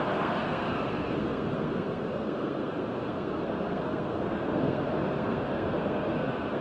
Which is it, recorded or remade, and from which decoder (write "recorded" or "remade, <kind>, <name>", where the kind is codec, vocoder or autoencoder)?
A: remade, codec, SNAC